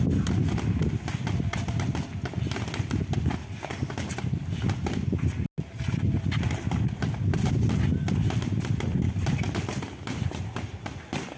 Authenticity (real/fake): real